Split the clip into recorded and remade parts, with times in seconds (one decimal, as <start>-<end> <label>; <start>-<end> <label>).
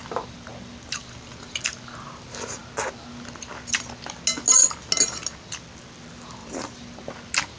0.0-6.4 recorded; 6.4-6.9 remade; 6.9-7.6 recorded